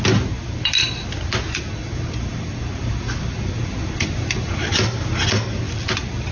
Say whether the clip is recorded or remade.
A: recorded